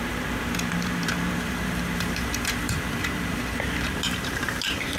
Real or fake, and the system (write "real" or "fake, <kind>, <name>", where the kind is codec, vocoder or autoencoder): fake, vocoder, BigVGAN v2